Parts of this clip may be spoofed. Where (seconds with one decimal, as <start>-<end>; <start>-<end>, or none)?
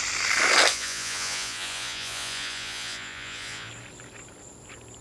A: 0.7-3.7